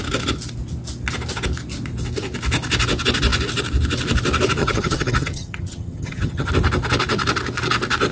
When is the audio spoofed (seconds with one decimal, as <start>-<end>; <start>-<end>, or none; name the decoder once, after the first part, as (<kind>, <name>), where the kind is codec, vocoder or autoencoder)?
4.6-6.5 (vocoder, HiFi-GAN)